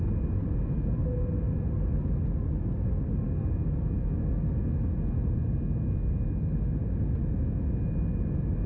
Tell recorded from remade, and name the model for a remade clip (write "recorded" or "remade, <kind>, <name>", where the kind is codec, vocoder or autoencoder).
recorded